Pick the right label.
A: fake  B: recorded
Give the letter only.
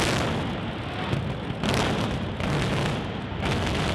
B